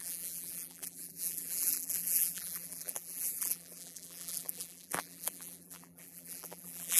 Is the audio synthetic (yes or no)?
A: yes